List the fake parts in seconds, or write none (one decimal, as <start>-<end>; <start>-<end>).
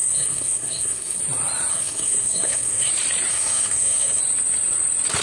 0.0-1.2; 1.7-2.9; 3.3-4.2